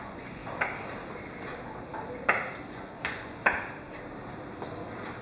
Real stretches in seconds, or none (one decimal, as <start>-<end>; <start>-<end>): 0.4-2.7; 3.4-5.2